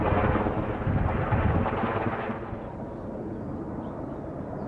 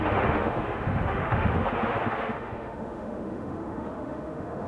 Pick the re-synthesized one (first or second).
second